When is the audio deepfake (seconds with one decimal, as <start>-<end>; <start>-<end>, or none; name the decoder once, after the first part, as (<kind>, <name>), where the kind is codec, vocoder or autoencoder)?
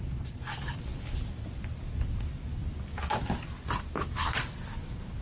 none